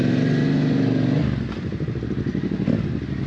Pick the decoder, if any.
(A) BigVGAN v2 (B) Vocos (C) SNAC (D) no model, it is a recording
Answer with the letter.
D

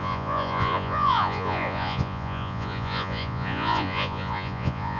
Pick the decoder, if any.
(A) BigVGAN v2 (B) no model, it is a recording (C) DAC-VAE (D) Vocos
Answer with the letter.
D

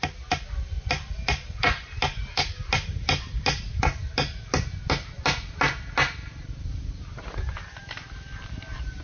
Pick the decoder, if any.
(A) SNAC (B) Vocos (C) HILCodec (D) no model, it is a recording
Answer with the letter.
D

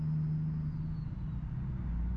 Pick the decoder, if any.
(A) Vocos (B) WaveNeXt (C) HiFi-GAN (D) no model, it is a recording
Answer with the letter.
D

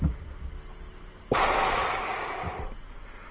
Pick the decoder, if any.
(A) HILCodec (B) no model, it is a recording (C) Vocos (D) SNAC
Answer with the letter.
B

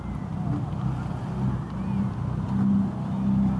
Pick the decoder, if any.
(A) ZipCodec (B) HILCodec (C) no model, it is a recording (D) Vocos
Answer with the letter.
C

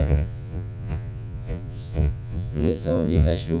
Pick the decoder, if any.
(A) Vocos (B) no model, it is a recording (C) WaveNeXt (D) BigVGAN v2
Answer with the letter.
A